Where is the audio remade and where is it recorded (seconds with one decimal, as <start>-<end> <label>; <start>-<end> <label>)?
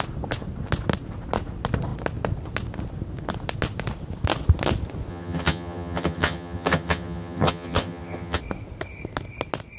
0.0-5.1 recorded; 5.1-8.4 remade; 8.4-9.8 recorded